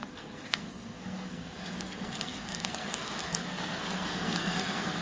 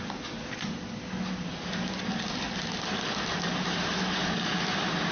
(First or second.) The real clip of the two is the second